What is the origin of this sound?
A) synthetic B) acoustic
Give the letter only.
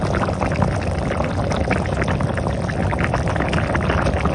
B